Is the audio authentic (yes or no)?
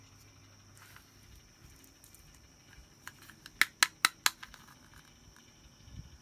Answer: yes